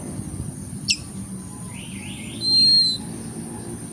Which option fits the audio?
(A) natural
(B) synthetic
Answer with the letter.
A